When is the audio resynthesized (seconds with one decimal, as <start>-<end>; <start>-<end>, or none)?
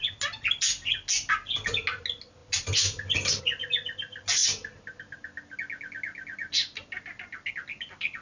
none